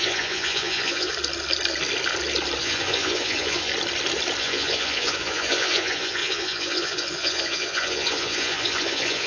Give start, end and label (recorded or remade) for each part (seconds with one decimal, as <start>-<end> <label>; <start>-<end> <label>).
0.0-1.1 remade; 1.1-2.6 recorded; 2.6-3.7 remade; 3.7-4.4 recorded; 4.4-9.3 remade